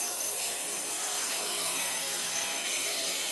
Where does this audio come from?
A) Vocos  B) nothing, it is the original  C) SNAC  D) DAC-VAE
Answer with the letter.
C